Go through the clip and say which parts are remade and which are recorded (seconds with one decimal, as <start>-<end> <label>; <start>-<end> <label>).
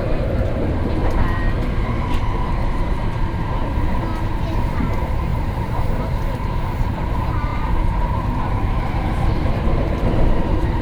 0.0-1.0 remade; 1.0-2.4 recorded; 2.4-4.1 remade; 4.1-4.6 recorded; 4.6-10.8 remade